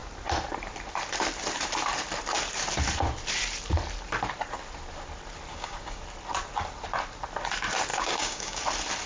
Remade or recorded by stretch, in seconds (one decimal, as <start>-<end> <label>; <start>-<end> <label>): 0.0-5.5 recorded; 5.5-6.0 remade; 6.0-7.9 recorded; 7.9-8.6 remade; 8.6-9.1 recorded